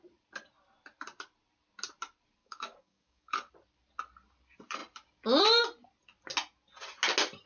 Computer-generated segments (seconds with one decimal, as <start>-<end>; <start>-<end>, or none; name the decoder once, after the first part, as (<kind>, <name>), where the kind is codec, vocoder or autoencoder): 2.4-3.5 (codec, DAC)